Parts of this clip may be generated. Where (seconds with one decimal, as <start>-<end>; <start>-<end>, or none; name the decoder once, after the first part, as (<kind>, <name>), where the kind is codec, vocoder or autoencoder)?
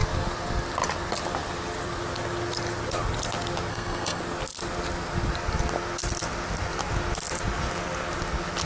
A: 3.7-4.2 (codec, SNAC)